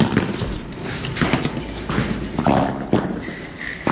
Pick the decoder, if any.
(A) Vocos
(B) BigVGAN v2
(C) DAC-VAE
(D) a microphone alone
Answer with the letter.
D